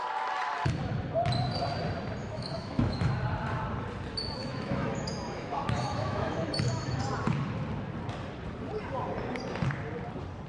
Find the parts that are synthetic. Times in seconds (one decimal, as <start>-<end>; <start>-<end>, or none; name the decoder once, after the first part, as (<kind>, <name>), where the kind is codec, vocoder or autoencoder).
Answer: 2.2-3.1 (autoencoder, DAC-VAE); 4.4-7.1